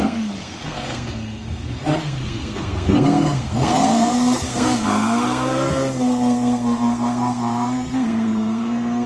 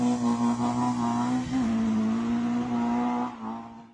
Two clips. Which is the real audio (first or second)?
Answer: second